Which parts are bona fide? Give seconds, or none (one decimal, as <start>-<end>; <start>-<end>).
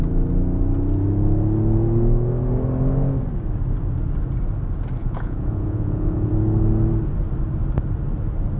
0.0-5.0; 6.3-8.6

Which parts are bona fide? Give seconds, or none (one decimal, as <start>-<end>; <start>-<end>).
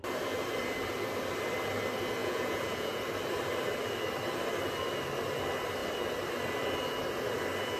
0.0-2.2; 3.0-7.8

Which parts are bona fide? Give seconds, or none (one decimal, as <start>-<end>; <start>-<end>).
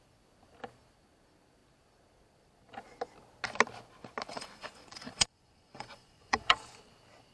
0.0-4.3; 6.8-7.3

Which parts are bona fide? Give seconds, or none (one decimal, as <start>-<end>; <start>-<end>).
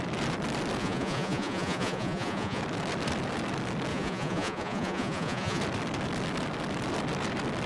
0.0-0.8; 2.6-3.9; 5.6-7.7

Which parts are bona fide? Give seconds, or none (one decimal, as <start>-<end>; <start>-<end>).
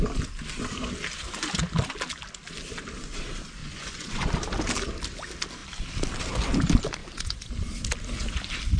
0.0-3.6; 4.3-7.0; 7.5-8.8